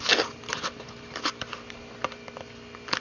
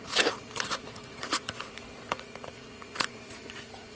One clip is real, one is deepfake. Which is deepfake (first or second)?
second